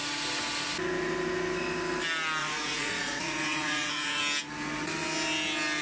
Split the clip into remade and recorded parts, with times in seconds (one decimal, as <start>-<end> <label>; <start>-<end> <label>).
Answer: 0.0-2.4 recorded; 2.4-4.2 remade; 4.2-5.8 recorded